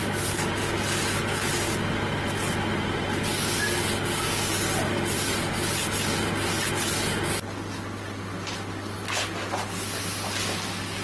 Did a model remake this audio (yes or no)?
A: no